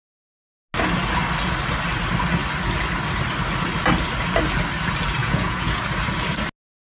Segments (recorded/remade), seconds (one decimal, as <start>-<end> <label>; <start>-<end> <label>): 0.0-5.2 recorded; 5.2-5.8 remade; 5.8-6.8 recorded